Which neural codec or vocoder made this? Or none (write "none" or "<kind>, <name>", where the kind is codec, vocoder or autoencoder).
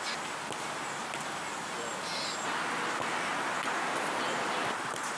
none